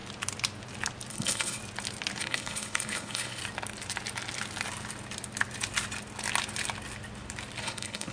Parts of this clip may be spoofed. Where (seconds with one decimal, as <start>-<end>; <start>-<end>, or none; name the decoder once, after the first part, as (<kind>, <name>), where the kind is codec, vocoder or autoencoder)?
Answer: 1.1-1.6 (codec, HILCodec); 2.2-3.4; 7.6-8.1